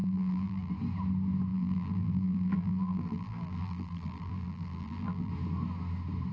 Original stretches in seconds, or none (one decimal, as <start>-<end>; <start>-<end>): 0.7-1.5; 5.3-6.3